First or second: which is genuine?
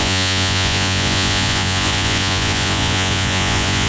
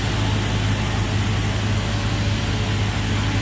second